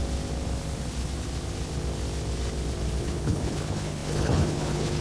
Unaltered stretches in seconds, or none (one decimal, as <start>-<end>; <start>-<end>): 0.0-3.0